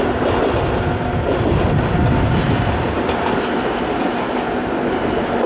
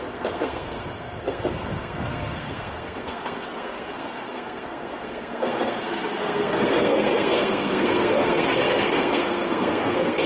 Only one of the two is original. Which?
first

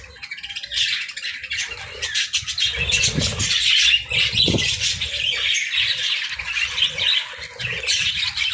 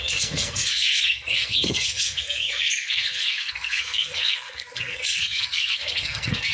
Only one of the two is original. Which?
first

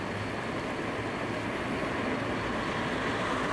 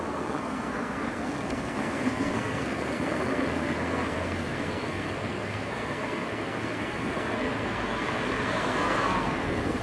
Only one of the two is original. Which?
first